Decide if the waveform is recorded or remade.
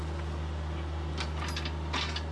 recorded